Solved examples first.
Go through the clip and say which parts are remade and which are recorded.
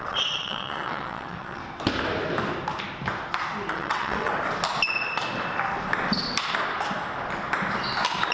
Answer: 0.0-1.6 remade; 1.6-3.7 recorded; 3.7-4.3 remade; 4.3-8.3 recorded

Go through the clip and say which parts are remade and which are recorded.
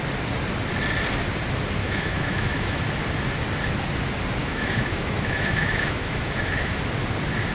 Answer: 0.0-1.8 recorded; 1.8-2.7 remade; 2.7-4.4 recorded; 4.4-6.8 remade; 6.8-7.5 recorded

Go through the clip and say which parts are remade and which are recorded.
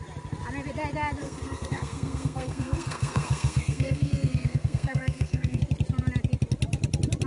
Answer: 0.0-1.2 recorded; 1.2-5.6 remade; 5.6-7.3 recorded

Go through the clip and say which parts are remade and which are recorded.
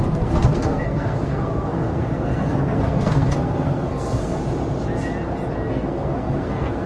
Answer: 0.0-4.4 remade; 4.4-5.7 recorded; 5.7-6.9 remade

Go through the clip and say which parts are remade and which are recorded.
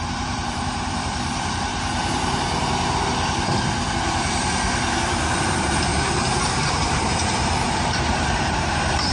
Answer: 0.0-1.7 remade; 1.7-5.3 recorded; 5.3-5.9 remade; 5.9-6.7 recorded; 6.7-9.1 remade